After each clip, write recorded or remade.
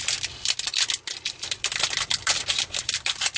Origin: remade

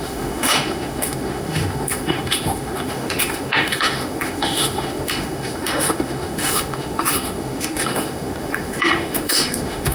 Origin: remade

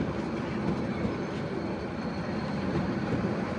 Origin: recorded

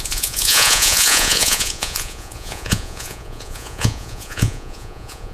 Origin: remade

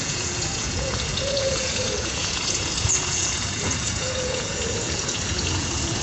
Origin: remade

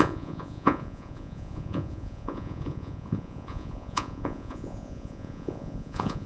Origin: remade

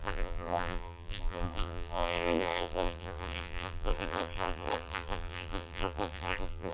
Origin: remade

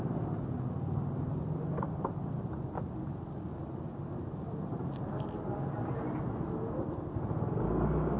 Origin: recorded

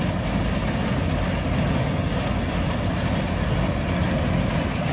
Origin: recorded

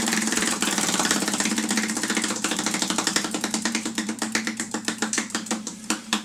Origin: remade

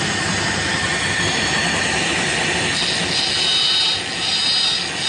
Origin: recorded